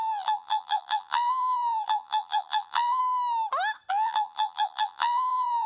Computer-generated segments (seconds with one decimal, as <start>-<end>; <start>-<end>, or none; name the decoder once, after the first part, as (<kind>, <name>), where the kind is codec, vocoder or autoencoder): 0.0-3.0 (vocoder, BigVGAN v2); 3.9-5.7